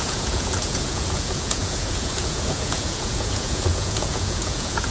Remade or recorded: remade